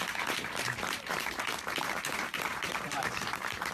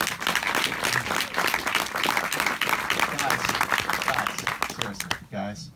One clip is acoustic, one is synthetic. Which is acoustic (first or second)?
second